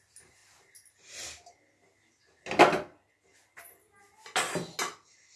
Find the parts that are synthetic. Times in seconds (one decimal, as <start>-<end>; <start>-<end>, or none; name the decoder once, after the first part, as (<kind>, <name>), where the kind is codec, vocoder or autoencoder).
none